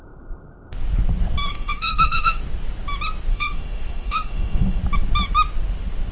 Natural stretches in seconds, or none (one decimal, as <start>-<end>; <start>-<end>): 0.0-1.5; 2.4-3.3; 4.8-6.1

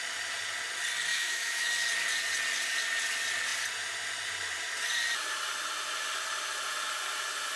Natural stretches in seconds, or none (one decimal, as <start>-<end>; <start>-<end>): 0.0-1.1; 1.7-7.6

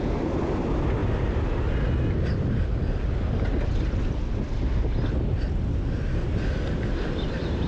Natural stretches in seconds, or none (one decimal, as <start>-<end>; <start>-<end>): 0.0-7.7